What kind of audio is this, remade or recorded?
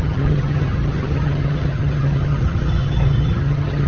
remade